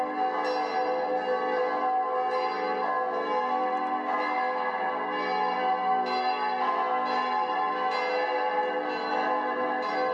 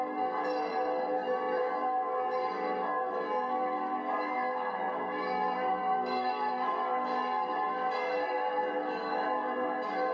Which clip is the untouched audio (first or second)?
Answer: first